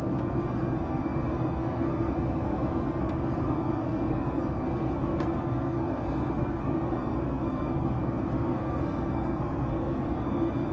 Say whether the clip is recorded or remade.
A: remade